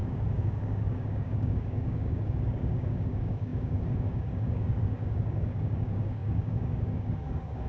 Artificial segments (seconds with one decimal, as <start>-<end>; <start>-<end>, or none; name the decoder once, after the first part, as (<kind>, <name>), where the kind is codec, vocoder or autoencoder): 0.0-7.7 (codec, DAC)

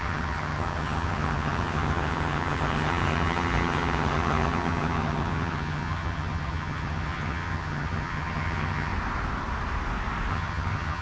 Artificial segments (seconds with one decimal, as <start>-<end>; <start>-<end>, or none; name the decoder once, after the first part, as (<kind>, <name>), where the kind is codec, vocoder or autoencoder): 0.0-8.9 (vocoder, HiFi-GAN); 10.3-11.0

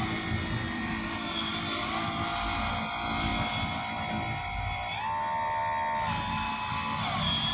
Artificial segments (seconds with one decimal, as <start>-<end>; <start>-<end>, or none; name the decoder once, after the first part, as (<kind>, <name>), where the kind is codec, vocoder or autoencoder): none

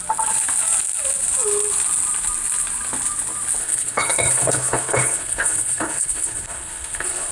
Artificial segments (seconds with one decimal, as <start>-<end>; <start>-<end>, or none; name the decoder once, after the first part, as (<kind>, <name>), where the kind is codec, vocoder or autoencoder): 3.6-7.3 (codec, HILCodec)

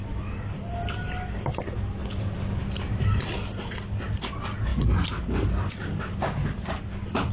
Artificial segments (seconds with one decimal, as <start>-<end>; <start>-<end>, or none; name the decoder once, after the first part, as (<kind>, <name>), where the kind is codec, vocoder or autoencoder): 2.0-3.2 (vocoder, BigVGAN v2); 4.7-6.0